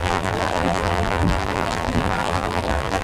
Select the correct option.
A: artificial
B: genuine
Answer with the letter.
A